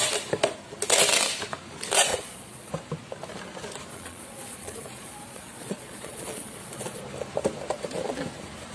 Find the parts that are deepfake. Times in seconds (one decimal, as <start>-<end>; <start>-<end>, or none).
2.1-2.7; 3.9-7.0